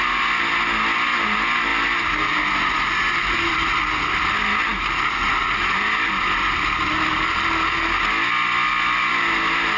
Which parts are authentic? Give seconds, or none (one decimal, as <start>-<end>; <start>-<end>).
0.0-9.8